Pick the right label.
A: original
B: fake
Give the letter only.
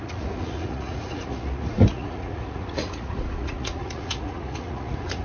B